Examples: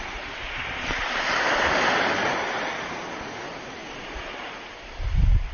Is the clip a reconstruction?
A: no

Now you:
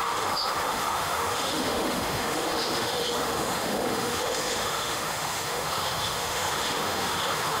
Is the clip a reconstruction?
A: yes